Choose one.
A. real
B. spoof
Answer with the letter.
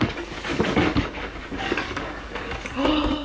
B